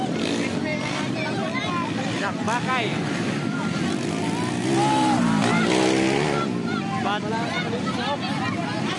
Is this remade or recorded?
recorded